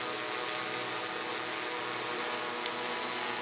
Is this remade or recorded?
recorded